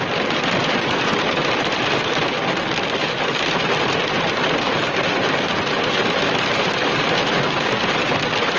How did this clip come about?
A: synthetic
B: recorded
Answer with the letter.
B